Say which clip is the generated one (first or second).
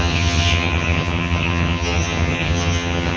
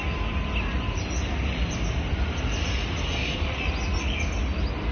first